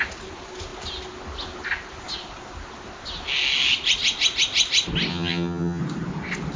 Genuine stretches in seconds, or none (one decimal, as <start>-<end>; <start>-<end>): 0.0-5.1; 5.8-6.6